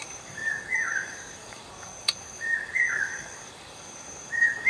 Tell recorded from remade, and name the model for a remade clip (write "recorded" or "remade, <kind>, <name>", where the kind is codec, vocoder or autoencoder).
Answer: remade, codec, DAC